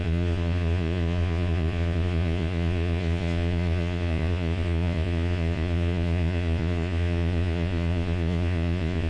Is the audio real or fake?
fake